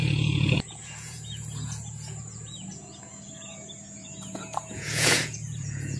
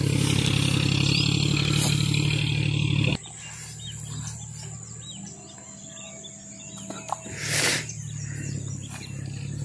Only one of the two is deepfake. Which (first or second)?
first